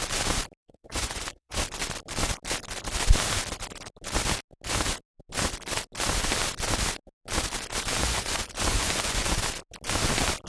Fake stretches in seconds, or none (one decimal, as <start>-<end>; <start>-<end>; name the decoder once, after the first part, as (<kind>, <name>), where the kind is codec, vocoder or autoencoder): 0.6-1.6 (vocoder, Vocos); 8.0-9.4